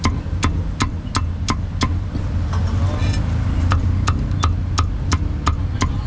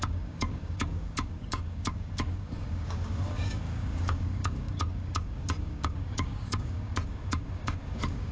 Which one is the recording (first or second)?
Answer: first